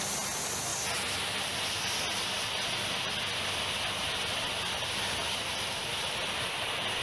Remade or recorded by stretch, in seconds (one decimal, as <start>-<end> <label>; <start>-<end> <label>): 0.0-7.0 recorded